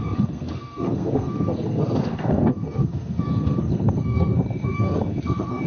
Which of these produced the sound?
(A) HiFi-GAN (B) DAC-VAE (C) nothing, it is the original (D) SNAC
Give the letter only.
D